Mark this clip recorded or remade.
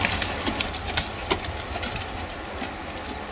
recorded